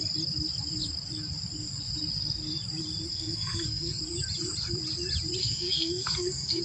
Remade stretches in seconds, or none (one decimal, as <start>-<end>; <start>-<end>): 3.1-4.0; 5.4-6.6